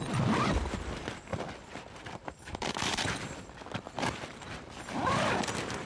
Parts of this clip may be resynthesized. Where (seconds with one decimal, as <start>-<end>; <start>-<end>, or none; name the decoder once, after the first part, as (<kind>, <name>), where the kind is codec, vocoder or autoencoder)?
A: 1.3-4.8 (vocoder, BigVGAN v2)